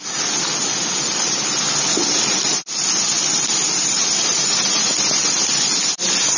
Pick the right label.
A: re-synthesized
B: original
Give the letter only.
B